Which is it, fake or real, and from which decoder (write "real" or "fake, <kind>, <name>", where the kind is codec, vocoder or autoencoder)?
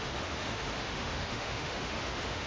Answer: fake, autoencoder, DAC-VAE